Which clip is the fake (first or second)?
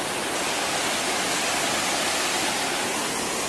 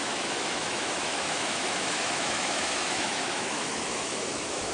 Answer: second